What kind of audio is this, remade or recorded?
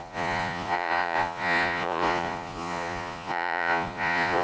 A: remade